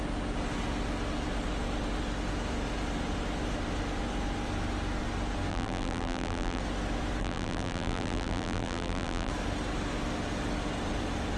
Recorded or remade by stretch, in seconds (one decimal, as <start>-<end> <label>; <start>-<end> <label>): 0.0-5.5 recorded; 5.5-6.6 remade; 6.6-7.2 recorded; 7.2-9.3 remade; 9.3-11.4 recorded